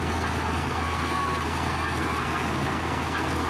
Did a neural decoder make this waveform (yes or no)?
yes